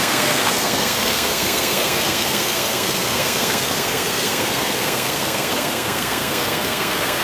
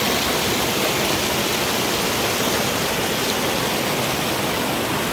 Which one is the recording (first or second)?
second